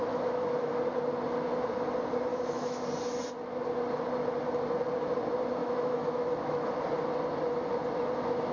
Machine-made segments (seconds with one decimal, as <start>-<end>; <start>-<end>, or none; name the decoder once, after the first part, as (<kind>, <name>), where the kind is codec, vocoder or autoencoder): 0.0-0.7 (autoencoder, DAC-VAE); 2.3-2.8; 5.6-6.7